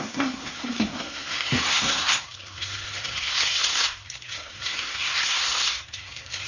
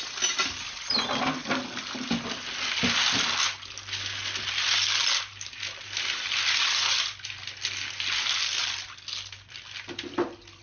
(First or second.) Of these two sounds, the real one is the second